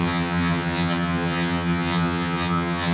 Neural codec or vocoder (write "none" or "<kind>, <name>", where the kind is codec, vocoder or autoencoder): vocoder, HiFi-GAN